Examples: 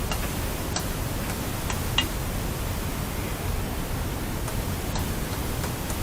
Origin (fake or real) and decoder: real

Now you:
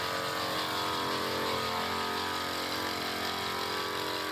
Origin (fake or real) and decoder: real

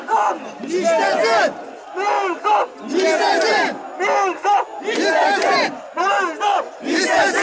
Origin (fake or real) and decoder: real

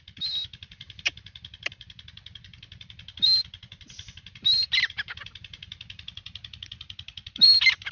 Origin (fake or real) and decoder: fake, vocoder, BigVGAN v2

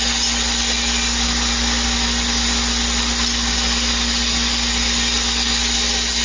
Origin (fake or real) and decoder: real